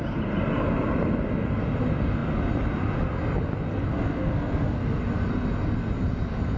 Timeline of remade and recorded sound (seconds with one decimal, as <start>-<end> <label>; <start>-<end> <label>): 0.0-3.9 recorded; 3.9-5.0 remade; 5.0-6.6 recorded